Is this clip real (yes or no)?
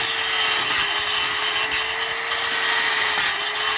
yes